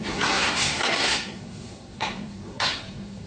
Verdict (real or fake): fake